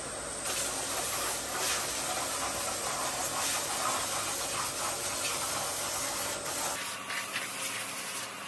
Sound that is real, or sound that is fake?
real